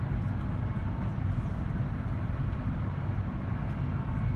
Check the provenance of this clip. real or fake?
real